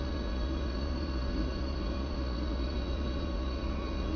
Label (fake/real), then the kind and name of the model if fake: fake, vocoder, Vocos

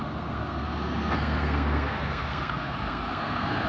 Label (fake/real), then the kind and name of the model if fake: fake, codec, SNAC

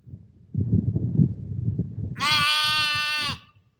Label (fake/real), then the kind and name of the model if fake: real